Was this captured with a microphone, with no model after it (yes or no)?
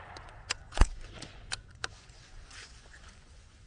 no